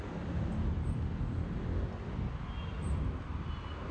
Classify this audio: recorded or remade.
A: recorded